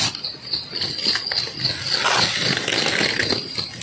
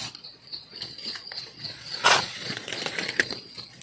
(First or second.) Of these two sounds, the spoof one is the second